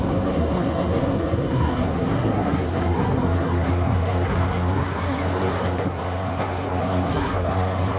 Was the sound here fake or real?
fake